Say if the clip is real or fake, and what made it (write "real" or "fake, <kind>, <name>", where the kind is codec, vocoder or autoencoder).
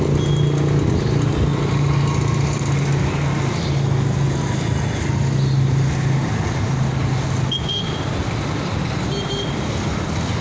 real